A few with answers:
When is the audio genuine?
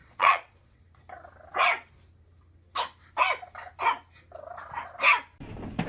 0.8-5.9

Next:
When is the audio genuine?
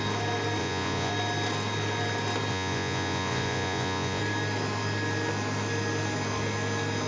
0.0-0.6; 1.1-2.5; 4.2-7.1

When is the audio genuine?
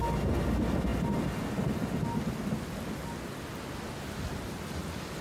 0.0-5.2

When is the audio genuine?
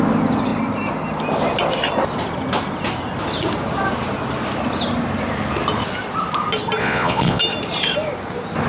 0.0-6.8; 7.4-8.7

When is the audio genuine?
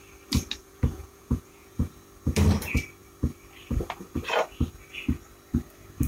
0.0-0.6; 1.9-6.1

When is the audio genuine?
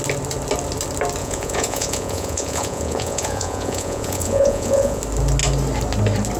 0.0-1.2; 5.0-6.4